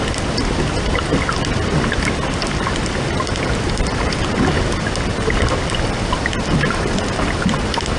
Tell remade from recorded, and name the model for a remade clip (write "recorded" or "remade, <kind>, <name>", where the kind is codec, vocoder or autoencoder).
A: recorded